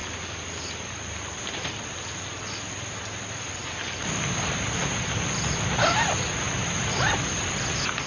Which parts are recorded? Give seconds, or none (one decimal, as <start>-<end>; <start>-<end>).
0.0-8.1